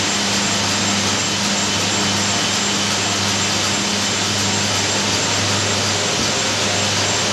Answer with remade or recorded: recorded